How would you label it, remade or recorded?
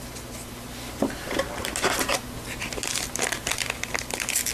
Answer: recorded